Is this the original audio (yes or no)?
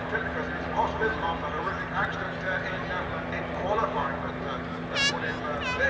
yes